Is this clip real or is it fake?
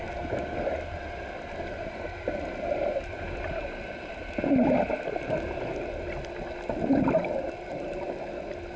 real